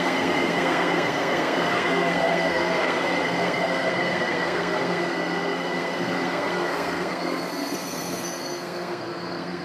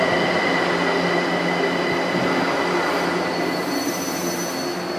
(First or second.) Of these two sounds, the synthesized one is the first